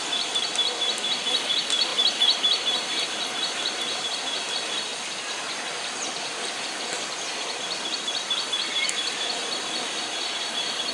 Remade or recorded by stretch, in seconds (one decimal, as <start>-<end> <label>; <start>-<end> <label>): 0.0-1.9 recorded; 1.9-4.5 remade; 4.5-10.9 recorded